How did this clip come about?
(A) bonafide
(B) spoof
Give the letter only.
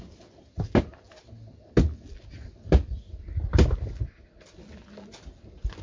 A